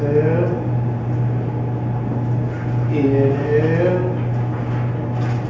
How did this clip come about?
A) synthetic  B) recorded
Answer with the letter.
B